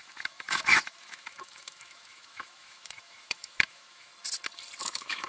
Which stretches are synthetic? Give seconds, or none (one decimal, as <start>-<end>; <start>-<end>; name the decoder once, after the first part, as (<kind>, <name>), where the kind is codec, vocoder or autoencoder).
0.0-4.1 (autoencoder, DAC-VAE); 4.8-5.3